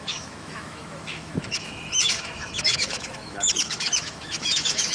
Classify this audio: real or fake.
fake